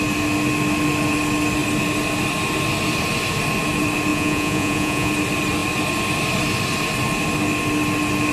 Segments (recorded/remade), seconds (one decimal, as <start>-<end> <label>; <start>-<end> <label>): 0.0-4.1 recorded; 4.1-5.1 remade; 5.1-8.3 recorded